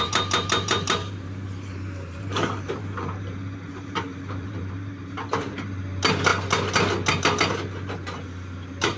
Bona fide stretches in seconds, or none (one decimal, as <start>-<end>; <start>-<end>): 6.3-9.0